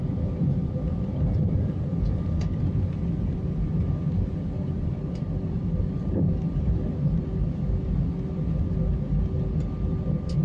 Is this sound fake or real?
real